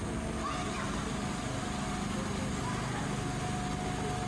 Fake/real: real